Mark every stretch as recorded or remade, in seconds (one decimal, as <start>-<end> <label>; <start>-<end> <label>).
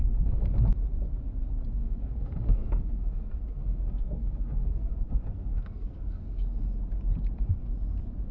0.0-0.5 remade; 0.5-1.8 recorded; 1.8-6.6 remade; 6.6-8.3 recorded